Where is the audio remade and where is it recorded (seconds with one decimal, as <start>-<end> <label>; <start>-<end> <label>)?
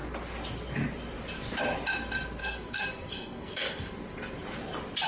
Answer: 0.0-2.4 recorded; 2.4-3.9 remade; 3.9-5.1 recorded